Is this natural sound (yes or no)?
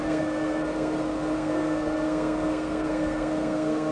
no